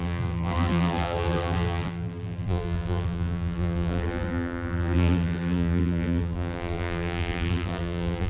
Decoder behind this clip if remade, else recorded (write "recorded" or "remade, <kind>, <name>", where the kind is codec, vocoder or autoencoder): remade, vocoder, BigVGAN v2